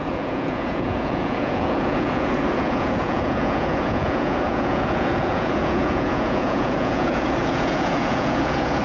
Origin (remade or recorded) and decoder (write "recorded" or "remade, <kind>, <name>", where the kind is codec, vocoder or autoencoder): remade, vocoder, Vocos